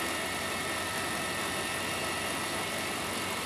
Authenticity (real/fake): fake